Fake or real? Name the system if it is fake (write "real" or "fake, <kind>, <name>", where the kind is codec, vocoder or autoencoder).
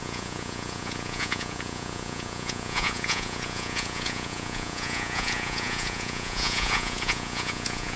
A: fake, vocoder, Vocos